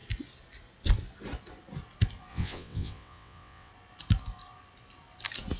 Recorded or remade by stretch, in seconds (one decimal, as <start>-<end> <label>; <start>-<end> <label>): 0.0-2.3 recorded; 2.3-3.7 remade; 3.7-5.6 recorded